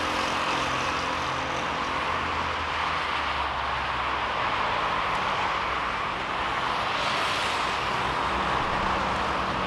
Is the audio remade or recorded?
recorded